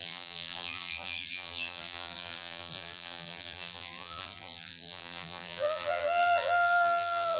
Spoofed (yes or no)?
yes